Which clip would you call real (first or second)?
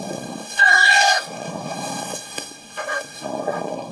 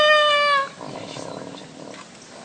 second